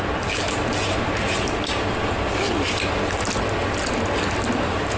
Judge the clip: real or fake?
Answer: real